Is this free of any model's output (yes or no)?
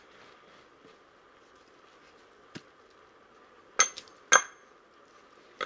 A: yes